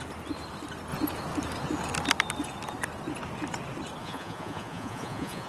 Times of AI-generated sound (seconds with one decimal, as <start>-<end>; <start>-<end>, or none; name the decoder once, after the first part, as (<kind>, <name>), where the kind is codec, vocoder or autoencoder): 4.0-5.5 (vocoder, Vocos)